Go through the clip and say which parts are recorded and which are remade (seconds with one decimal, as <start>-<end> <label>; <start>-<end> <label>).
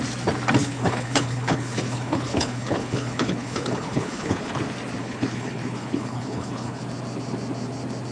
0.0-0.6 recorded; 0.6-4.5 remade; 4.5-5.0 recorded; 5.0-6.8 remade; 6.8-8.1 recorded